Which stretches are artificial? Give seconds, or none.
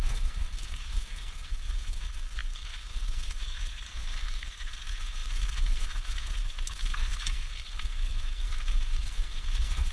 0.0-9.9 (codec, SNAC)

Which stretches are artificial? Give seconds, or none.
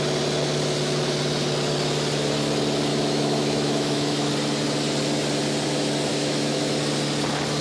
2.9-4.3 (autoencoder, DAC-VAE); 6.1-6.6